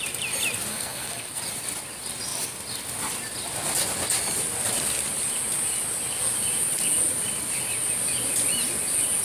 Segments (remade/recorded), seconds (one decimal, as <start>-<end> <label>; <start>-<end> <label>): 0.0-0.7 recorded; 0.7-1.4 remade; 1.4-9.2 recorded